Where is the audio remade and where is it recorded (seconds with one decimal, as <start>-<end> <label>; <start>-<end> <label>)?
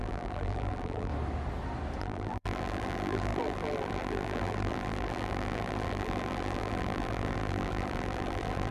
0.0-1.1 remade; 1.1-2.0 recorded; 2.0-8.7 remade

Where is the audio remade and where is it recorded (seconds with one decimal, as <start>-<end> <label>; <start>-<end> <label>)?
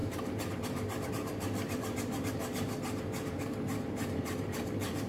0.0-5.1 remade